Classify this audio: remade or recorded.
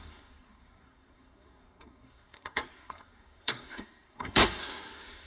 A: remade